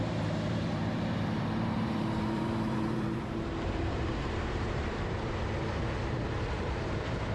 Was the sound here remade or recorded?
remade